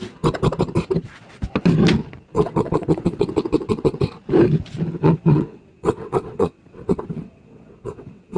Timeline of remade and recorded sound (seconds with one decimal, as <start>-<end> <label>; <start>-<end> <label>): 0.0-2.3 recorded; 2.3-4.0 remade; 4.0-5.0 recorded; 5.0-8.4 remade